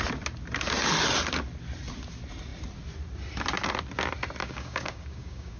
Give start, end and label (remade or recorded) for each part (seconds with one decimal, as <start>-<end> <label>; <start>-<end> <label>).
0.0-4.4 recorded; 4.4-5.6 remade